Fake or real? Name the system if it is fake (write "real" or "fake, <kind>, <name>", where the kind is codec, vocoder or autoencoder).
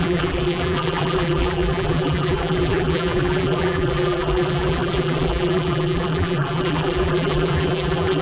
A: fake, vocoder, BigVGAN v2